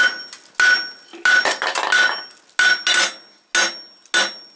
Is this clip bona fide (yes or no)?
yes